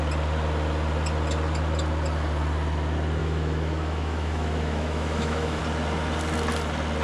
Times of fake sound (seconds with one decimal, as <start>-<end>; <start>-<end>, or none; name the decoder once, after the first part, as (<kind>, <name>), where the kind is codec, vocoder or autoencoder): 3.2-5.6 (autoencoder, DAC-VAE)